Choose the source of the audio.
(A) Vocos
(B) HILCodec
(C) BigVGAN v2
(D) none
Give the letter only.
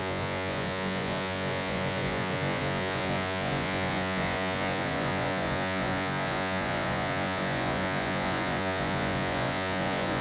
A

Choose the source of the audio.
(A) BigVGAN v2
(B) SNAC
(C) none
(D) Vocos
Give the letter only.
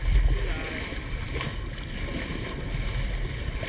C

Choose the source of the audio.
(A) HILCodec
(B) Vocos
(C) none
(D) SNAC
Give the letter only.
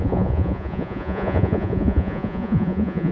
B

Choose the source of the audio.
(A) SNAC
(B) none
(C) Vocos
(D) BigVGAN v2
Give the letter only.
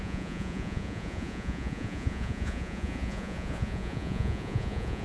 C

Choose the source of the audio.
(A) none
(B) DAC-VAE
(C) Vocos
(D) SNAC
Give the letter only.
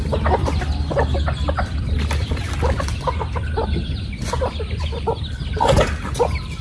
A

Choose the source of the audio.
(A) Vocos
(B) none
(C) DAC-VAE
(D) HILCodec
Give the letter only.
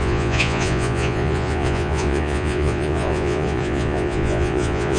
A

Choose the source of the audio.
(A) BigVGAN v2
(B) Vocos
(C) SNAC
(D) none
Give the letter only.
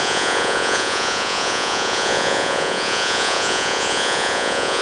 B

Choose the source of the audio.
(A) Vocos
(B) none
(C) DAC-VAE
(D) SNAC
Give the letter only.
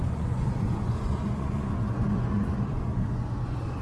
A